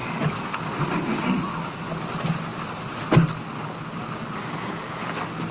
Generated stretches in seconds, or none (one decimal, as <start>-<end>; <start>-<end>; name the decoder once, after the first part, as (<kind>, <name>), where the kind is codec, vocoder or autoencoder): none